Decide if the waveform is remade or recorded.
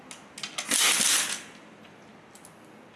recorded